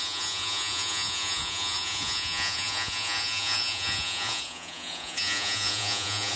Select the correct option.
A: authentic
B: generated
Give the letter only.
B